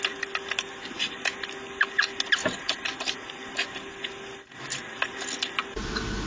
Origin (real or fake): real